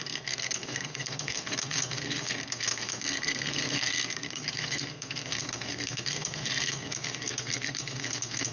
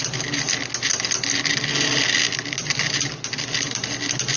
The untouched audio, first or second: second